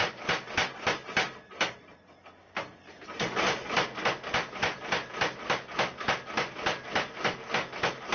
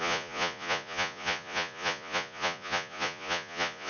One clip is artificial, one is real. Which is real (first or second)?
first